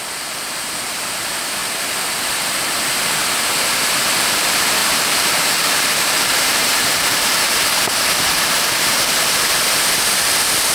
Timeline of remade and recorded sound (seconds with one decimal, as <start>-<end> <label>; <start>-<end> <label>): 0.0-4.8 recorded; 4.8-9.8 remade; 9.8-10.7 recorded